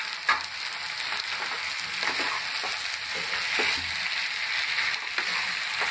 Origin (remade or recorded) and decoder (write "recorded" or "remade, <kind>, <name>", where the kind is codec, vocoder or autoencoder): recorded